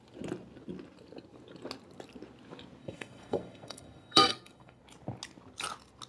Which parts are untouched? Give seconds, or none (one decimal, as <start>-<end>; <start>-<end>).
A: 0.0-2.8; 4.8-6.1